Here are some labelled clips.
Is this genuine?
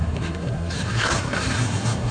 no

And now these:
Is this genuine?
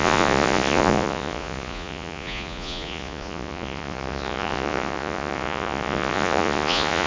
no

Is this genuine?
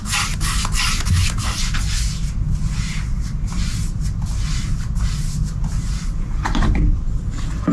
yes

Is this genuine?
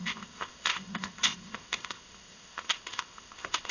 no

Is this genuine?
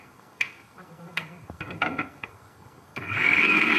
no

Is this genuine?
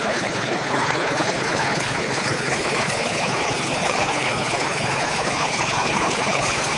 no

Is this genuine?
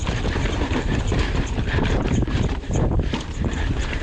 no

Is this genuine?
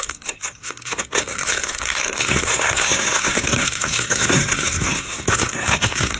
no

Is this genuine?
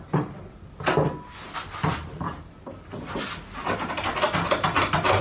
yes